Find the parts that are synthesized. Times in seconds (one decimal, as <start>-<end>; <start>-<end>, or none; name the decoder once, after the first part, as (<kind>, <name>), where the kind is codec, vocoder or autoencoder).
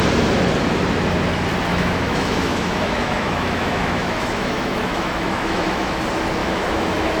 1.7-6.0 (autoencoder, DAC-VAE); 6.4-7.2